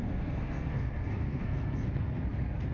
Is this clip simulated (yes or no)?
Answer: yes